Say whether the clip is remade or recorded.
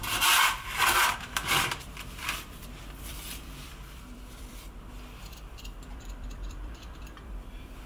remade